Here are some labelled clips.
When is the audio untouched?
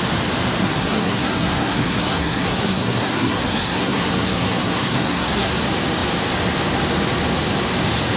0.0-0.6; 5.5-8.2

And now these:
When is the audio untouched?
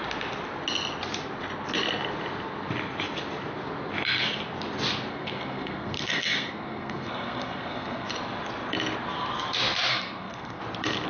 0.0-5.1; 8.1-9.9; 10.6-11.1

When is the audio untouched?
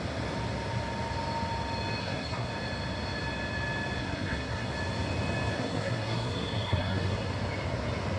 0.0-2.0; 2.5-4.0; 4.7-5.5; 7.3-8.2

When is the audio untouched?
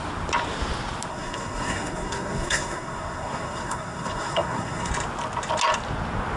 0.0-1.1; 4.9-6.4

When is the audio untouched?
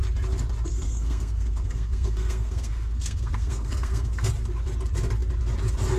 0.0-0.7; 4.3-6.0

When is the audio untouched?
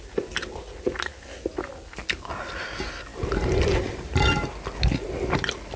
0.0-5.8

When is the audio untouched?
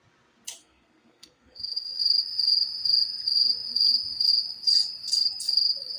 0.0-0.6; 2.0-6.0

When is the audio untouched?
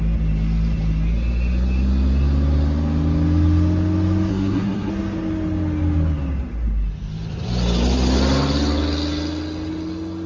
0.0-4.3; 4.9-10.3